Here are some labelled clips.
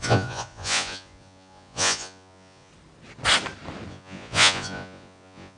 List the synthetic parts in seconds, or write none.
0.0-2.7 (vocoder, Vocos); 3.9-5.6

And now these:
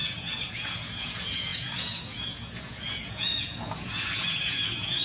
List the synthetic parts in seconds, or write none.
0.0-5.0 (vocoder, Vocos)

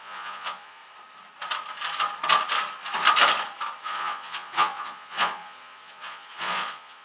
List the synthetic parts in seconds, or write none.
0.0-0.8 (vocoder, Vocos); 3.8-7.0

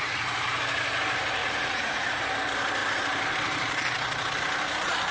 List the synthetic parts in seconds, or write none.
1.4-2.2 (vocoder, Vocos)

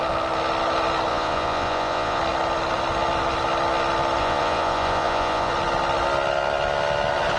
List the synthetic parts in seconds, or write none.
1.1-2.2 (vocoder, Vocos); 4.2-5.5